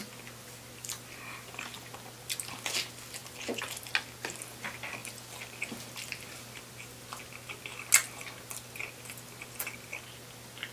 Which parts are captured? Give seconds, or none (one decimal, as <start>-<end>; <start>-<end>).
0.0-10.7